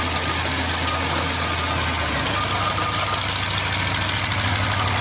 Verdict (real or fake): real